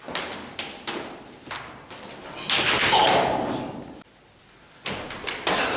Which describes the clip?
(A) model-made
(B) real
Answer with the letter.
B